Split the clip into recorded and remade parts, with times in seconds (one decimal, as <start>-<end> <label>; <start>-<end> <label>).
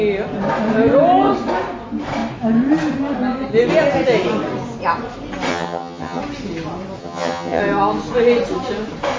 0.0-5.5 recorded; 5.5-6.2 remade; 6.2-7.0 recorded; 7.0-7.6 remade; 7.6-9.2 recorded